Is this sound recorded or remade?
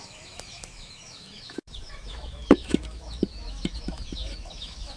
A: remade